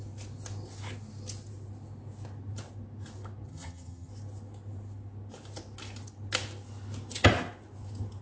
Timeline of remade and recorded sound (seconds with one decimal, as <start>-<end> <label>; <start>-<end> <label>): 0.0-3.5 recorded; 3.5-4.1 remade; 4.1-8.2 recorded